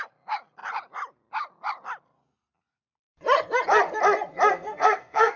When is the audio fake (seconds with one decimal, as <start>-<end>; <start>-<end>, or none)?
4.5-5.4